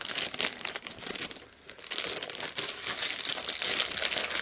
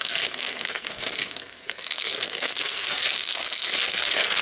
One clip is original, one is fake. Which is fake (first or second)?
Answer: second